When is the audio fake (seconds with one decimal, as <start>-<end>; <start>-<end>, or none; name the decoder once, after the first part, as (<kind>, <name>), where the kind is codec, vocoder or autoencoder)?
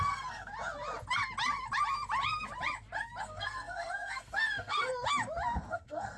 0.0-0.5 (codec, SNAC); 3.2-4.9; 5.7-6.2